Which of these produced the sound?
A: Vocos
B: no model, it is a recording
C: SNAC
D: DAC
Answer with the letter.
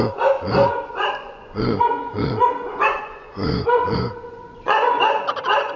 A